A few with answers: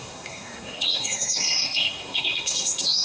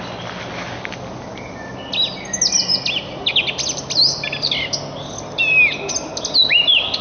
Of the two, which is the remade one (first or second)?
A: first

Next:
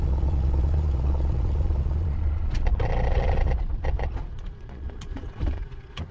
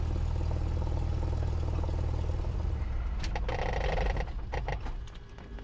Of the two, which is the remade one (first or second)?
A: first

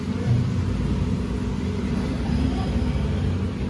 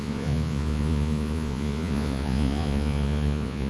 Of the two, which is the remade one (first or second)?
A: second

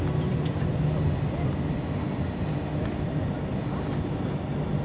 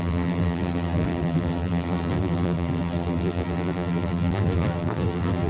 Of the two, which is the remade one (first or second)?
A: second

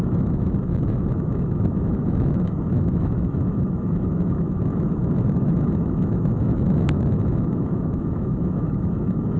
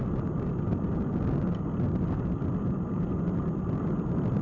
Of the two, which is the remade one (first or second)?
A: first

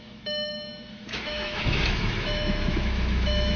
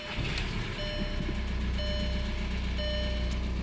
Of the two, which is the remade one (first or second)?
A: first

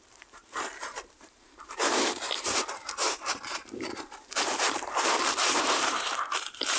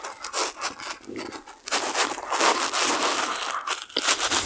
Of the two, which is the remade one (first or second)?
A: first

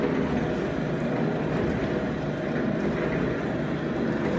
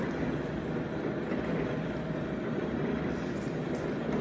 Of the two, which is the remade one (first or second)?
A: second